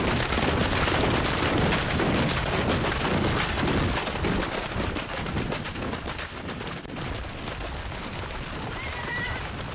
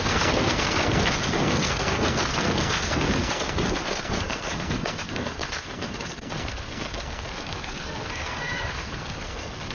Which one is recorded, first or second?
first